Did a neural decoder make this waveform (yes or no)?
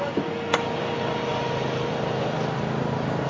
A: no